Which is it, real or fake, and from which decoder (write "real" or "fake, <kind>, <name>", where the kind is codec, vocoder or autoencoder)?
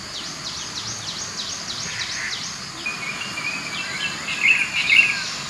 real